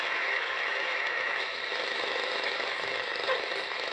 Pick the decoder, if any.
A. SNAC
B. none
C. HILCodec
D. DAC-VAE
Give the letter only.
D